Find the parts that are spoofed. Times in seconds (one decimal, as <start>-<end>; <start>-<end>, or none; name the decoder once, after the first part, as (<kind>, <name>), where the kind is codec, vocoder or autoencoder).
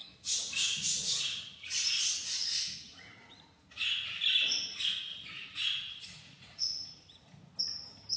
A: 2.9-4.2 (vocoder, Vocos); 5.1-7.6